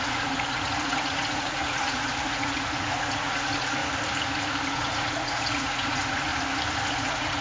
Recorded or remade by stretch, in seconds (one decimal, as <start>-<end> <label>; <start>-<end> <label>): 0.0-3.8 remade; 3.8-4.7 recorded; 4.7-6.3 remade; 6.3-6.9 recorded; 6.9-7.4 remade

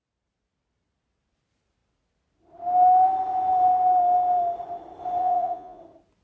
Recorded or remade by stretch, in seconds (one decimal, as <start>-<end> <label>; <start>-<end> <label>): 0.0-5.2 recorded; 5.2-5.8 remade; 5.8-6.2 recorded

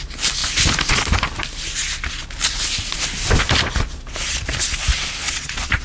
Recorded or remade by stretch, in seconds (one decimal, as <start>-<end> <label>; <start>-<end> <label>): 0.0-4.9 recorded; 4.9-5.8 remade

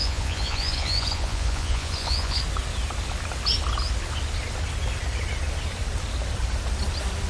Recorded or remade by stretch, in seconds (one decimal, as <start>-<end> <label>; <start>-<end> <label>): 0.0-2.4 remade; 2.4-7.3 recorded

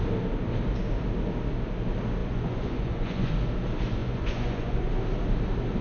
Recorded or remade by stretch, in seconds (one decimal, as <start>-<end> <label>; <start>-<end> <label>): 0.0-2.2 recorded; 2.2-3.3 remade; 3.3-4.0 recorded; 4.0-4.9 remade; 4.9-5.8 recorded